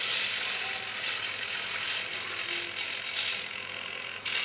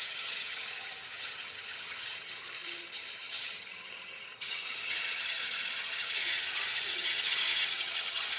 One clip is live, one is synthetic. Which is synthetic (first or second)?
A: second